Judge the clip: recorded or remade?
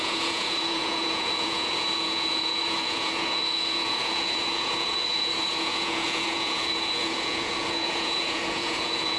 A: remade